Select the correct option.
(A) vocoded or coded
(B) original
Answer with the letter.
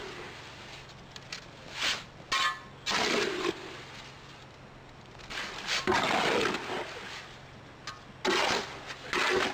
B